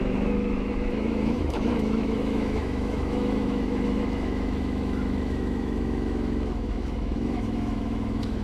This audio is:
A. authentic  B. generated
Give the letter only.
B